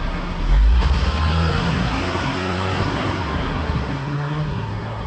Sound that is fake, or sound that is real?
fake